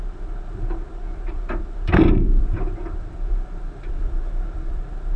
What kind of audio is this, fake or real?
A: fake